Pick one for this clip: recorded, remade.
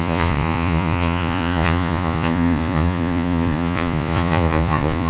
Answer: remade